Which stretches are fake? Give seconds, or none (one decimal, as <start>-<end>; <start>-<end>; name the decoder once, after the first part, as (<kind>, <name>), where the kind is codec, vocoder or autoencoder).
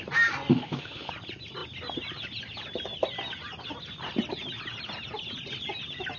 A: 0.5-1.1 (autoencoder, DAC-VAE)